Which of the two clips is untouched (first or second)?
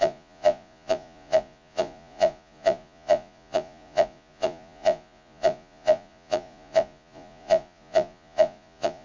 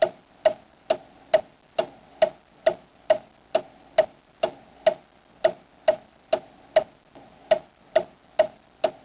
second